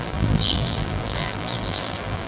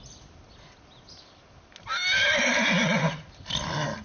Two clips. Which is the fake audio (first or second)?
first